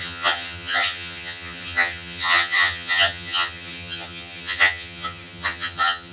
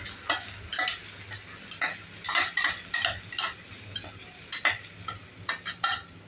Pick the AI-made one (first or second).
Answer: first